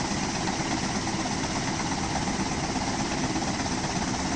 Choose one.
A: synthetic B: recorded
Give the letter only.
B